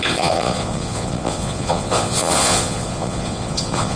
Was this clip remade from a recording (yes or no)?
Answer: yes